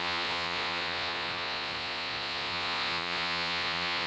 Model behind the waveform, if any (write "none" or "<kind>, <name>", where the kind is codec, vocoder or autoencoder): vocoder, Vocos